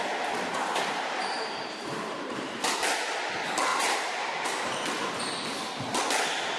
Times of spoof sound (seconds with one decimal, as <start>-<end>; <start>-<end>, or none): 0.6-2.7; 3.7-4.7